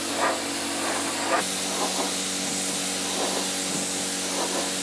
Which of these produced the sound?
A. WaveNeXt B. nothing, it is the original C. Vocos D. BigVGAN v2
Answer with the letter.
B